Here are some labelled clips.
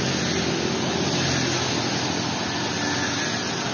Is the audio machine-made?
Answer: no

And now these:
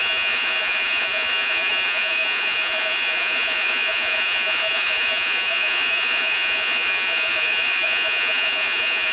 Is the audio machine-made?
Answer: yes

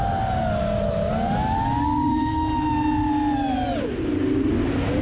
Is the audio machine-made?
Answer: no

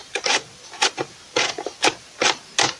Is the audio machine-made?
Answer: no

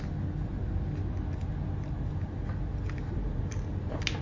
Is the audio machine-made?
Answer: no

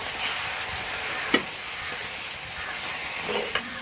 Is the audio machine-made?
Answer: no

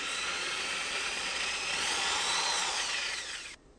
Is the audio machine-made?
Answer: yes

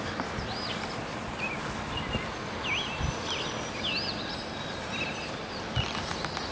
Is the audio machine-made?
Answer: no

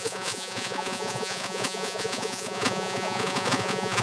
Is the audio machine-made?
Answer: yes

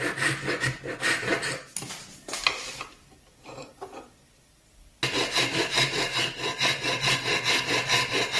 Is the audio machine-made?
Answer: no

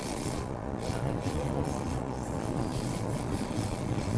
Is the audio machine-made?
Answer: yes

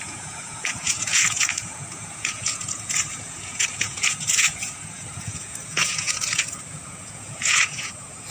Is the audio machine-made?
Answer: yes